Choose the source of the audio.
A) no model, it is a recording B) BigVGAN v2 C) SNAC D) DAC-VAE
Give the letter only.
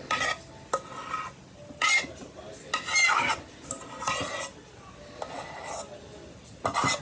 A